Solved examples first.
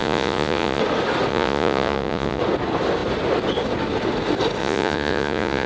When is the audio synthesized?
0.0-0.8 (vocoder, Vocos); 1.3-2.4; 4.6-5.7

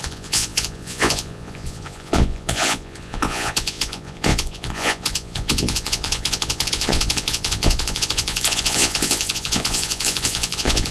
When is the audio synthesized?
0.0-10.9 (vocoder, Vocos)

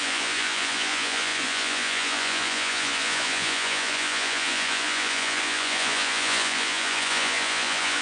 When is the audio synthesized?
0.0-8.0 (vocoder, Vocos)

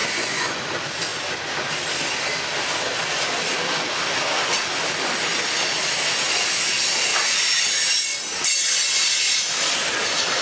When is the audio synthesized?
0.0-0.6 (vocoder, Vocos)

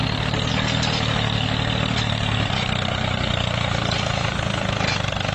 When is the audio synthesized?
none

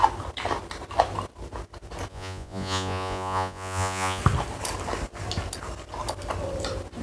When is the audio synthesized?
2.1-4.2 (vocoder, Vocos)

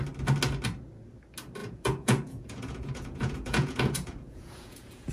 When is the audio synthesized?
1.6-5.1 (vocoder, Vocos)

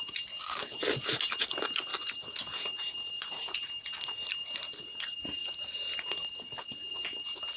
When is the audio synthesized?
none